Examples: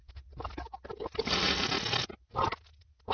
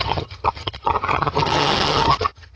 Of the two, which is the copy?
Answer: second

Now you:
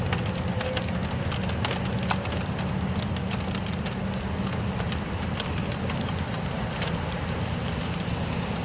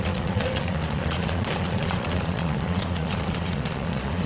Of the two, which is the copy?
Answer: second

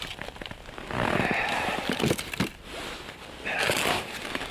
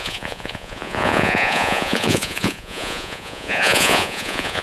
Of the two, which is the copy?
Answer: second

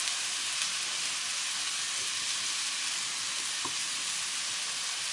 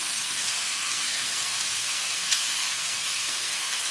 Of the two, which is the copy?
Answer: second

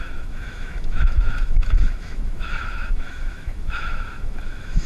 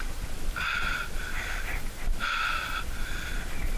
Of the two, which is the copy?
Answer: first